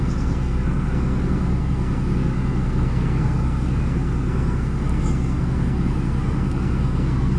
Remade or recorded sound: remade